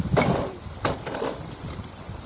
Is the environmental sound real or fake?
real